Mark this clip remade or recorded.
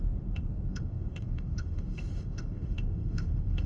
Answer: remade